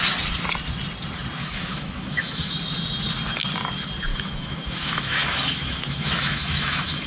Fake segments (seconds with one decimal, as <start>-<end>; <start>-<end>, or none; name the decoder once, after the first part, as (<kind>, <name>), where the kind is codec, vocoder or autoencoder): 1.4-2.5 (autoencoder, DAC-VAE); 4.1-7.1

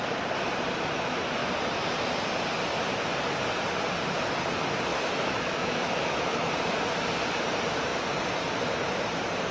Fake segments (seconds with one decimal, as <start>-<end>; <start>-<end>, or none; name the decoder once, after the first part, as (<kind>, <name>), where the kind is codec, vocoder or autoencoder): 4.9-6.5 (autoencoder, DAC-VAE)

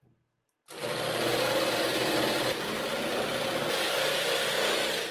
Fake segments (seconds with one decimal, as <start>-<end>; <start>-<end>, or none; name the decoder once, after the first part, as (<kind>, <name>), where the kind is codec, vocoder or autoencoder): none

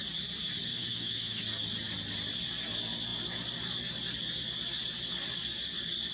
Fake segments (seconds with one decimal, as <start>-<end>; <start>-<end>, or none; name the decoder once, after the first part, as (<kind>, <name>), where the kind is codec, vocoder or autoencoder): 0.7-1.4 (autoencoder, DAC-VAE)

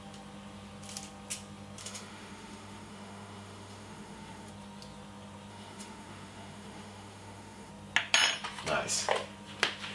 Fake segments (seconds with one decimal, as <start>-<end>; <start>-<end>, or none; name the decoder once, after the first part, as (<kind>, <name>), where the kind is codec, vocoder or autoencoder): 1.8-4.5 (autoencoder, DAC-VAE); 5.5-7.7

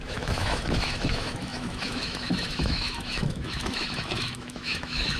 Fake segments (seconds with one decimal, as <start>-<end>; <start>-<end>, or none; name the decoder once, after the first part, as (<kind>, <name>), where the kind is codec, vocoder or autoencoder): 0.0-5.2 (autoencoder, DAC-VAE)